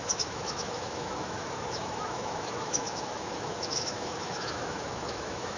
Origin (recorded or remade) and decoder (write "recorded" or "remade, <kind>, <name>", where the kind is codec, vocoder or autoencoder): remade, autoencoder, DAC-VAE